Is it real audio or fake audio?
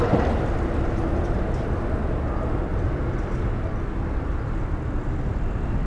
real